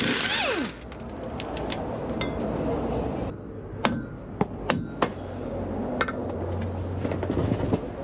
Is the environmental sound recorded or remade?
recorded